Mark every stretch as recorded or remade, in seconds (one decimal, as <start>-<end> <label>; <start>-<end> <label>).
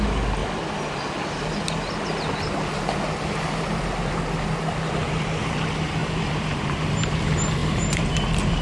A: 0.0-6.0 recorded; 6.0-6.8 remade; 6.8-7.6 recorded; 7.6-8.6 remade